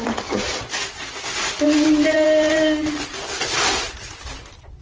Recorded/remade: recorded